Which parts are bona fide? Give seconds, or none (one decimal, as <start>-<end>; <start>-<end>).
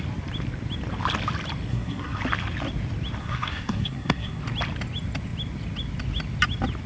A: 0.0-1.7; 2.2-3.2; 4.4-6.9